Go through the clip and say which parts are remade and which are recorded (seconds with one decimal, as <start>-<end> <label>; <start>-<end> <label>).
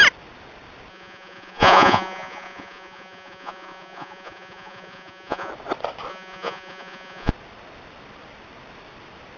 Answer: 0.0-0.9 recorded; 0.9-5.5 remade; 5.5-6.1 recorded; 6.1-7.3 remade; 7.3-9.4 recorded